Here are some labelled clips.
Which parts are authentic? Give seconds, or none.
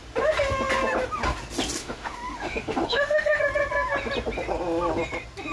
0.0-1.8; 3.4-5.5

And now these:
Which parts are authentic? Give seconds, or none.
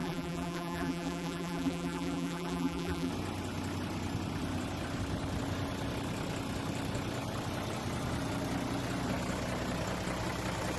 3.1-10.8